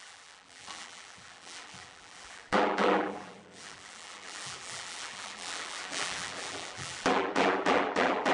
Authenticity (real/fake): fake